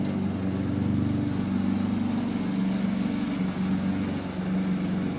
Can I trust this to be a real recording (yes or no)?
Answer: yes